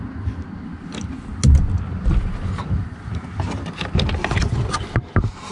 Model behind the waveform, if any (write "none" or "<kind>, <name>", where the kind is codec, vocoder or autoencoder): none